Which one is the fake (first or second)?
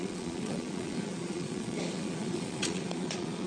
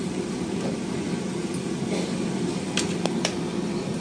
first